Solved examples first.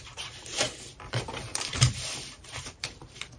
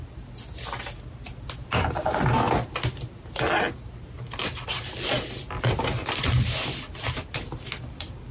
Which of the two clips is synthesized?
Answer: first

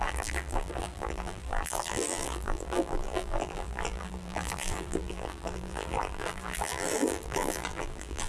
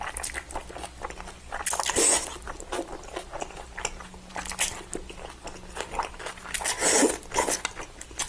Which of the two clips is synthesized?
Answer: first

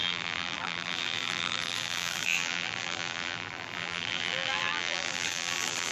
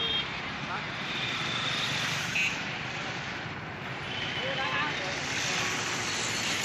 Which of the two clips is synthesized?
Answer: first